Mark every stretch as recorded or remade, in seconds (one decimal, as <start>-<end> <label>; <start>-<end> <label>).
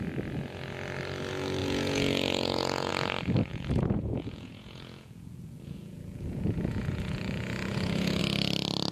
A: 0.0-1.6 recorded; 1.6-2.9 remade; 2.9-3.5 recorded; 3.5-8.2 remade; 8.2-8.9 recorded